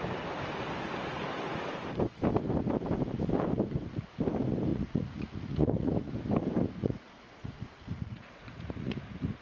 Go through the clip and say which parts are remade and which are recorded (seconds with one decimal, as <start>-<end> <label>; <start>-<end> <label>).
0.0-4.7 recorded; 4.7-6.1 remade; 6.1-6.8 recorded; 6.8-9.0 remade; 9.0-9.4 recorded

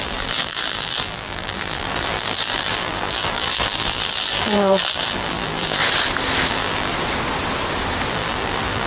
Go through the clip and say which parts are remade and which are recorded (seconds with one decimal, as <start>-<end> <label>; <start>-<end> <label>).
0.0-5.8 remade; 5.8-6.5 recorded; 6.5-6.9 remade; 6.9-8.1 recorded; 8.1-8.9 remade

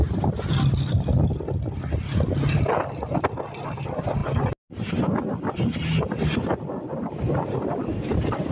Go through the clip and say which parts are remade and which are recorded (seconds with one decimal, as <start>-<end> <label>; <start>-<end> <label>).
0.0-8.5 recorded

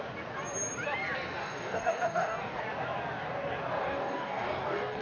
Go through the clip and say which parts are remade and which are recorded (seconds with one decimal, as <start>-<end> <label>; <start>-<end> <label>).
0.0-1.4 recorded; 1.4-2.6 remade; 2.6-3.8 recorded; 3.8-5.0 remade

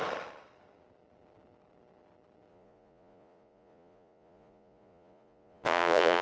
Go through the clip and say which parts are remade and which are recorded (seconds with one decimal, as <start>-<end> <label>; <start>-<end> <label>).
0.0-2.5 recorded; 2.5-6.2 remade